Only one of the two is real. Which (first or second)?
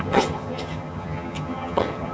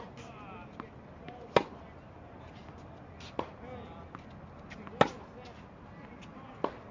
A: second